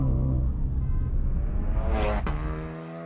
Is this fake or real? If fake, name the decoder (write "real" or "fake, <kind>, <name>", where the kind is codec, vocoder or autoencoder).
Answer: real